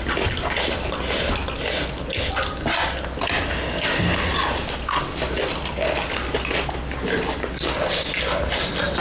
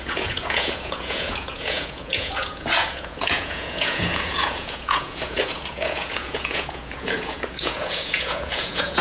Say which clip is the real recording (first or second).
first